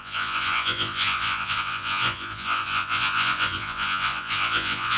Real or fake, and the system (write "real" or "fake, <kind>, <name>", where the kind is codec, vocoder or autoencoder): fake, vocoder, Vocos